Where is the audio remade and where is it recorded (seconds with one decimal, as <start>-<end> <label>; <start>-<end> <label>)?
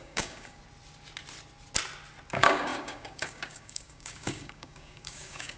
0.0-0.6 remade; 0.6-2.3 recorded; 2.3-5.6 remade